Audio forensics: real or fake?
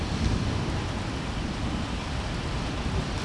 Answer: fake